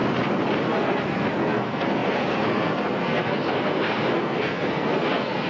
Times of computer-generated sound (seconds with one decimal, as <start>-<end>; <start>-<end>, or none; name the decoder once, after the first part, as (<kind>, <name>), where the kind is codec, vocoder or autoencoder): 0.6-5.5 (codec, SNAC)